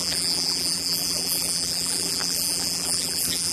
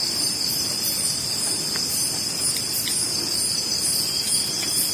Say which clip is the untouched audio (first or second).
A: second